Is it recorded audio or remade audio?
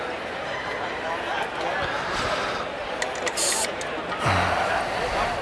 recorded